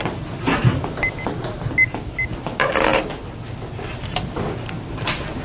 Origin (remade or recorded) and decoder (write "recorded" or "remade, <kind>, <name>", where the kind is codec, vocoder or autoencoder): recorded